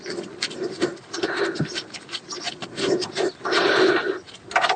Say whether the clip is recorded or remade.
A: recorded